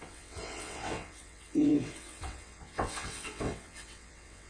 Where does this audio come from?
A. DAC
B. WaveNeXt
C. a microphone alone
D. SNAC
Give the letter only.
B